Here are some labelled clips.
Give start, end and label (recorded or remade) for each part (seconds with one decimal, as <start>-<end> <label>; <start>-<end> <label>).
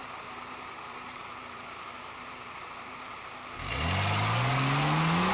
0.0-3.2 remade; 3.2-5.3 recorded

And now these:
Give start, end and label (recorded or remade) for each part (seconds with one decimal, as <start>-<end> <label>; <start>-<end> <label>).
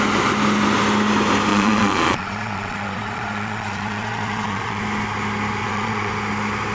0.0-1.5 recorded; 1.5-4.8 remade; 4.8-5.6 recorded; 5.6-6.1 remade; 6.1-6.7 recorded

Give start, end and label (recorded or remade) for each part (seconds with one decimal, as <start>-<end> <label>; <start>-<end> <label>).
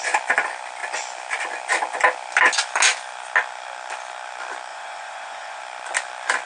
0.0-4.7 recorded; 4.7-5.6 remade; 5.6-6.5 recorded